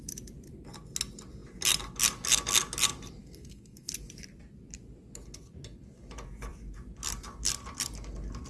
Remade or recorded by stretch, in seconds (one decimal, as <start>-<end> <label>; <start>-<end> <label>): 0.0-3.2 recorded; 3.2-3.9 remade; 3.9-8.5 recorded